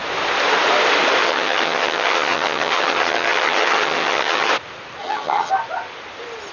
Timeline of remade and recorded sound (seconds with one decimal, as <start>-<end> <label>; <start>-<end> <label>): 0.0-1.2 recorded; 1.2-4.5 remade; 4.5-5.0 recorded; 5.0-5.5 remade; 5.5-6.5 recorded